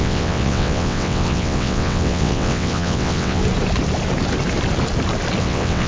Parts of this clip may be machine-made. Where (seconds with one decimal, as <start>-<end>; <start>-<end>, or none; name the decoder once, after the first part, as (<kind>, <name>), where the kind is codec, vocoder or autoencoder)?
0.0-3.4 (vocoder, WaveNeXt); 5.4-5.9